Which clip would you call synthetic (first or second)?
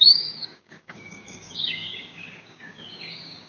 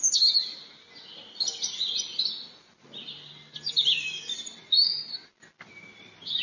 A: first